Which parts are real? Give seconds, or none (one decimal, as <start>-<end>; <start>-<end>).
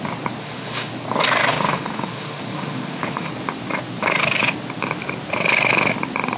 0.0-0.4; 0.9-1.5; 3.3-6.4